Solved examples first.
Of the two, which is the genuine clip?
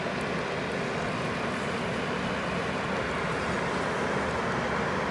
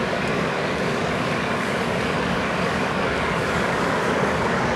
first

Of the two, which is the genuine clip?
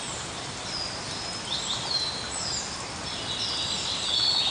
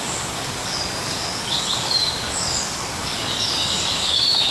first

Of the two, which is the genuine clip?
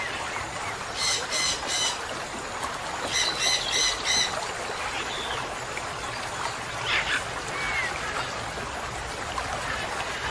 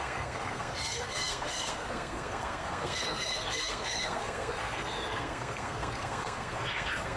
first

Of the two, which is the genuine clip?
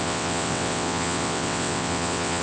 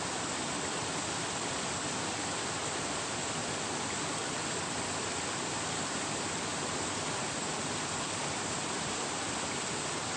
second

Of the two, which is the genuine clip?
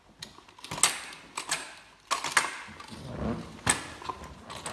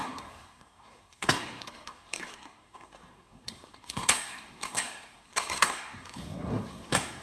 first